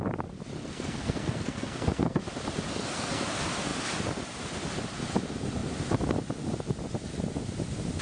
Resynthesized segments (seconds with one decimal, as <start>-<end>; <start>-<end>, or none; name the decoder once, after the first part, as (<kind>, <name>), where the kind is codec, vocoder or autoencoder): 0.6-2.2 (codec, SNAC); 2.7-3.3